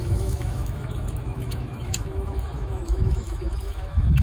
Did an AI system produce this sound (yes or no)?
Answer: yes